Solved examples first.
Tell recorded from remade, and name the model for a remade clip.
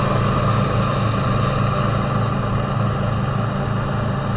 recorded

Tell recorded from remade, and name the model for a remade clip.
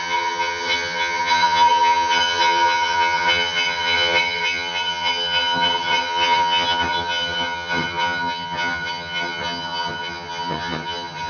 remade, vocoder, HiFi-GAN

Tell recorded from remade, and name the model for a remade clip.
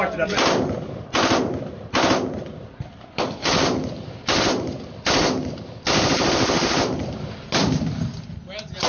recorded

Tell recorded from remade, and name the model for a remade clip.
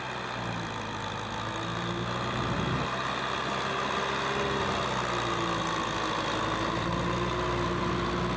recorded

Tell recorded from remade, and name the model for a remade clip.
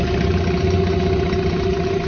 recorded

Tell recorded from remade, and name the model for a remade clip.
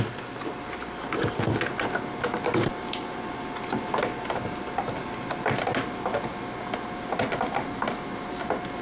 recorded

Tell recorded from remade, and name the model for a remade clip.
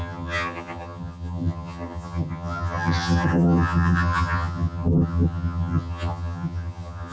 remade, vocoder, HiFi-GAN